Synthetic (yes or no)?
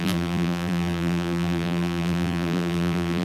yes